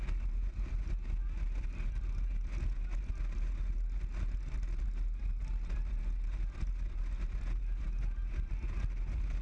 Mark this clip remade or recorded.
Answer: recorded